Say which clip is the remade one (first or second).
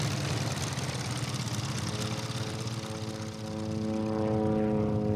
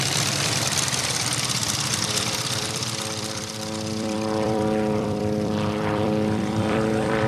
second